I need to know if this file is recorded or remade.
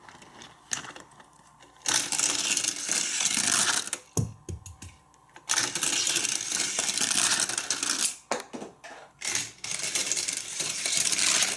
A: recorded